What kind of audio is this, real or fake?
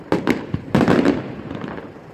fake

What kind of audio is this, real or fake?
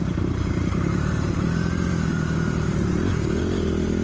fake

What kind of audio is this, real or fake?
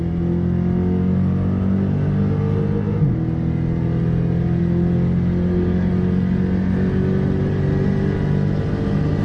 real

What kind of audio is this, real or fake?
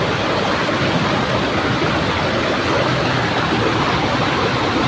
real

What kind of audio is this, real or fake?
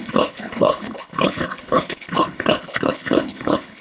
fake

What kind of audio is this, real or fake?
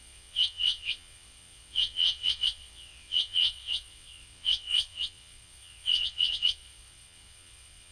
fake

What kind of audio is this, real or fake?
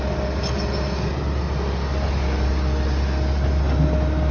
real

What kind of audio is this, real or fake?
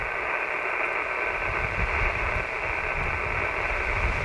real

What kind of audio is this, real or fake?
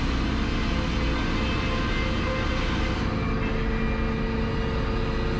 real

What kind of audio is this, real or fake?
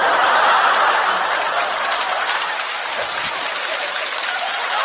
real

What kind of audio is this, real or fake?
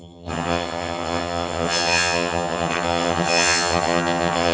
fake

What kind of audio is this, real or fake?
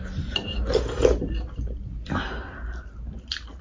real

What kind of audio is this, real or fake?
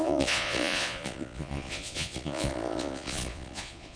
fake